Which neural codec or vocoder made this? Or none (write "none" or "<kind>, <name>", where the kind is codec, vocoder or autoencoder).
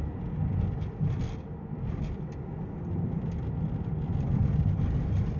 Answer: none